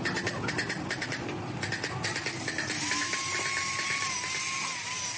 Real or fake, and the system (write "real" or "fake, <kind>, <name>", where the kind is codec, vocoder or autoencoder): real